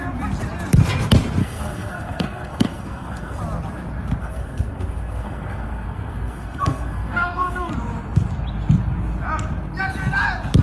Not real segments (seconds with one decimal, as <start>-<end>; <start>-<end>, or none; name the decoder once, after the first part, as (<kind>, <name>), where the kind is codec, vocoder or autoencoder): 1.4-3.4 (codec, SNAC); 4.2-7.7